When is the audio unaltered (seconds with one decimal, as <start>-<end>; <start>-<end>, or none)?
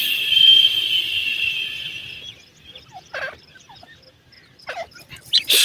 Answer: 0.0-5.6